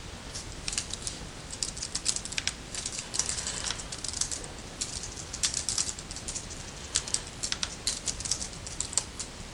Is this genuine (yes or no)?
no